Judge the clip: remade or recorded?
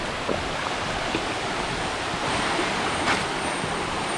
recorded